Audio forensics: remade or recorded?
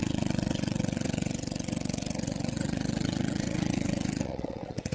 remade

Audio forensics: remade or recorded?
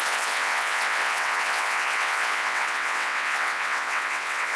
remade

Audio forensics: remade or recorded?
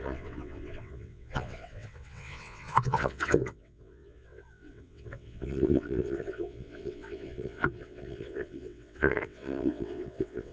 remade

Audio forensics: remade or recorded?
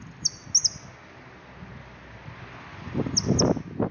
recorded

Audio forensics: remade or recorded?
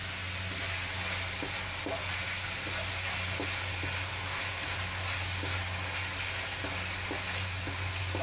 recorded